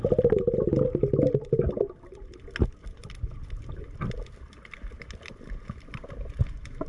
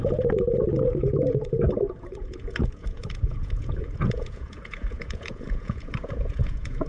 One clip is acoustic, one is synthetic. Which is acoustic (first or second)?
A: first